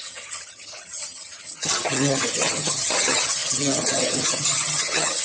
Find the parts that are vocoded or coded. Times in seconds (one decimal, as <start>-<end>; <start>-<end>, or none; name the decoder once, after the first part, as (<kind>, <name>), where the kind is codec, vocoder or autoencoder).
0.0-5.2 (vocoder, HiFi-GAN)